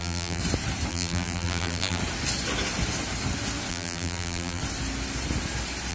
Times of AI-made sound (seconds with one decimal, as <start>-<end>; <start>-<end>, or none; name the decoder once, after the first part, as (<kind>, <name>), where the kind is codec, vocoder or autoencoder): 0.0-0.4 (vocoder, BigVGAN v2); 0.9-2.0; 3.7-4.6

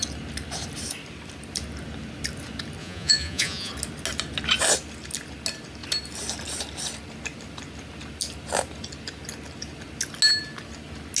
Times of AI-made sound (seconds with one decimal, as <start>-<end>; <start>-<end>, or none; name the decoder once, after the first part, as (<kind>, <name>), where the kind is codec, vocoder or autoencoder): 2.8-3.7 (vocoder, Vocos)

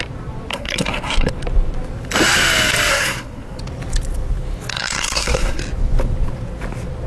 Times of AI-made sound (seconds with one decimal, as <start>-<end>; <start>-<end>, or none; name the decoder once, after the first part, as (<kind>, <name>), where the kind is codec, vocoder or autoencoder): 0.5-1.3 (codec, SNAC); 2.9-3.6; 4.7-5.6

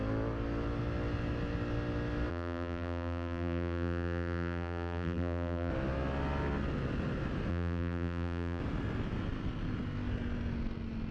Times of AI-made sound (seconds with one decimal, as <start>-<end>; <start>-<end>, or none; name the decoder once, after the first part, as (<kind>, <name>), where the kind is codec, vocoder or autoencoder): 2.3-5.7 (vocoder, BigVGAN v2); 7.5-8.6